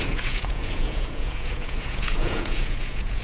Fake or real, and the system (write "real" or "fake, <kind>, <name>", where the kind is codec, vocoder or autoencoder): fake, vocoder, Vocos